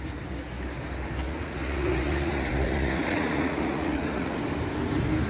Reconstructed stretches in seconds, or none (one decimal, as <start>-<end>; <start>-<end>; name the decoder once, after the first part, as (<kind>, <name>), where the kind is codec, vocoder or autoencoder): 1.2-4.4 (vocoder, Vocos)